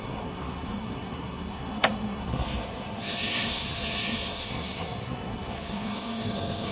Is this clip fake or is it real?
fake